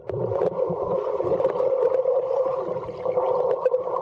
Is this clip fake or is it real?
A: fake